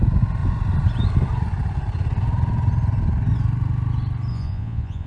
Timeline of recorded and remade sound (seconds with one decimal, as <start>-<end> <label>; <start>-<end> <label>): 0.0-4.3 recorded; 4.3-5.1 remade